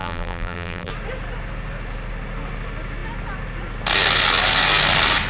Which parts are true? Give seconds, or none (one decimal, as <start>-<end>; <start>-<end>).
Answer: 0.9-5.3